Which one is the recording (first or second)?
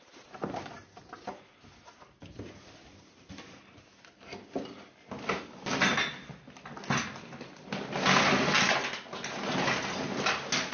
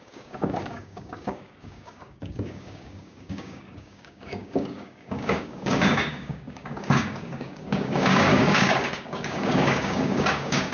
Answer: first